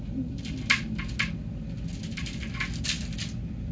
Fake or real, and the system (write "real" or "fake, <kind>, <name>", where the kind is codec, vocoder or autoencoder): real